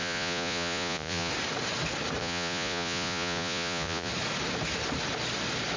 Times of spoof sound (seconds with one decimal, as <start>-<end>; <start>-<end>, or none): 0.0-1.3; 2.2-4.1